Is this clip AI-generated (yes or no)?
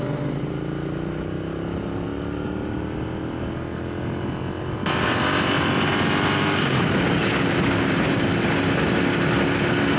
no